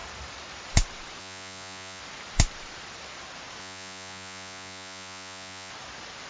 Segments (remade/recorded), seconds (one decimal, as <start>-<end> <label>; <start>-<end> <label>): 0.0-1.2 recorded; 1.2-2.0 remade; 2.0-3.6 recorded; 3.6-5.7 remade; 5.7-6.3 recorded